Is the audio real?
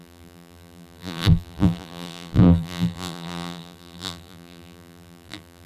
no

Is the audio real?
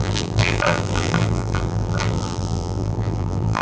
no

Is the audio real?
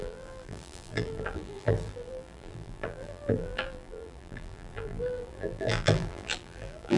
no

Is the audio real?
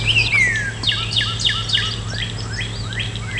yes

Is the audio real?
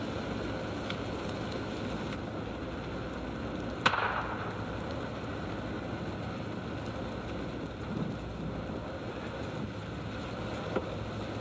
yes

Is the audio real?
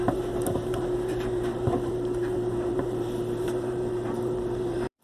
no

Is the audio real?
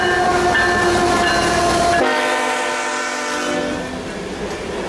yes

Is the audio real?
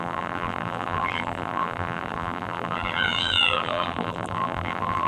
no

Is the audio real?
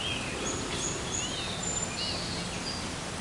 yes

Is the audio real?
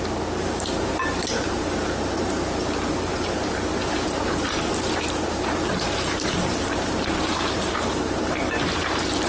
no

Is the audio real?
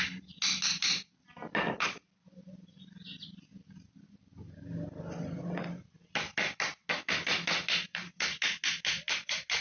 yes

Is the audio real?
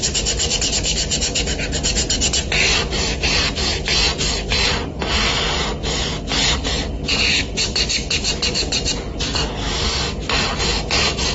yes